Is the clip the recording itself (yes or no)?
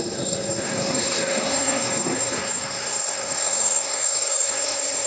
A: no